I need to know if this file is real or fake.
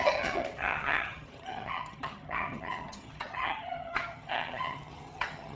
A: fake